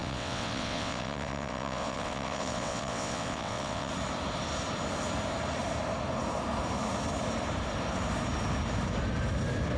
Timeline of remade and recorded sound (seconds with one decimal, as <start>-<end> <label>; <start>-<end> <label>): 0.0-3.9 remade; 3.9-9.8 recorded

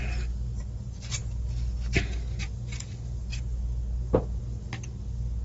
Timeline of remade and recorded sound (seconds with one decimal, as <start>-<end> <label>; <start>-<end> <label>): 0.0-5.4 recorded

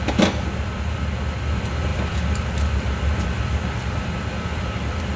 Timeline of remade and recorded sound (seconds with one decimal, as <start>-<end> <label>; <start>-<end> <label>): 0.0-5.2 remade

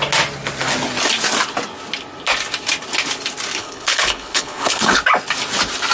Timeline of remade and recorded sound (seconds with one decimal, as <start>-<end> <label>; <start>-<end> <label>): 0.0-3.6 recorded; 3.6-5.0 remade; 5.0-5.9 recorded

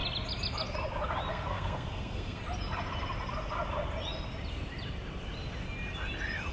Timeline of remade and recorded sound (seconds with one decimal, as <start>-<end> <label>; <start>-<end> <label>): 0.0-1.3 recorded; 1.3-2.4 remade; 2.4-6.5 recorded

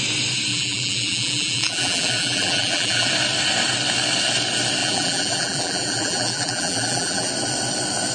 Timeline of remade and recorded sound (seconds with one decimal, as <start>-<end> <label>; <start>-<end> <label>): 0.0-0.5 recorded; 0.5-3.1 remade; 3.1-4.8 recorded; 4.8-7.3 remade; 7.3-8.1 recorded

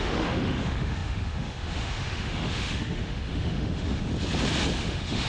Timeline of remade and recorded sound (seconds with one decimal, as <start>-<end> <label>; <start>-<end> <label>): 0.0-4.1 remade; 4.1-4.8 recorded; 4.8-5.3 remade